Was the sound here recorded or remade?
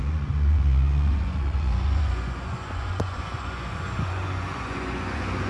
remade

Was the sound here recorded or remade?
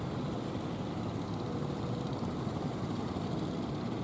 recorded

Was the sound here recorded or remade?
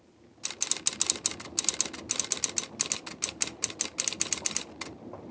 recorded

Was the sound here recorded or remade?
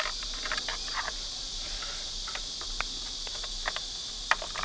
recorded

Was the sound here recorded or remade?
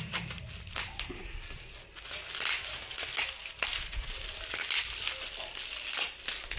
recorded